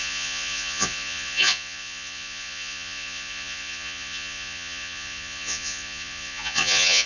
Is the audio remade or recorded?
remade